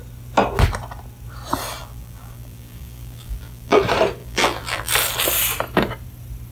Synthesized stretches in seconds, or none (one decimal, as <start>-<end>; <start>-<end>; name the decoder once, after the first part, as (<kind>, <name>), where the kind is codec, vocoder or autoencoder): 1.8-3.8 (vocoder, BigVGAN v2); 4.2-4.9

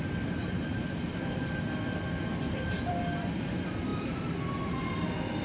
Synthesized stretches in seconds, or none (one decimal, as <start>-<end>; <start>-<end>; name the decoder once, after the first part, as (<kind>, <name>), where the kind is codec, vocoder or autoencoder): 0.4-3.4 (vocoder, BigVGAN v2); 3.9-4.5